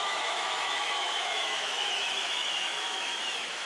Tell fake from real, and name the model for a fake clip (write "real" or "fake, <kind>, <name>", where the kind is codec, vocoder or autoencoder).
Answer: fake, autoencoder, DAC-VAE